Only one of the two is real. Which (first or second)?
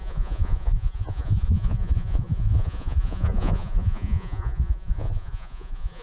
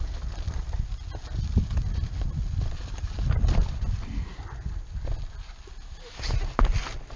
second